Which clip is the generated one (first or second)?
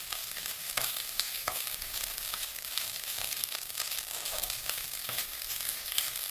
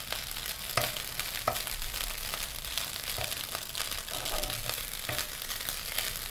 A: first